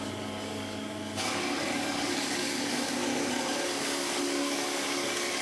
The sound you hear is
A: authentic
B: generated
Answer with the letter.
B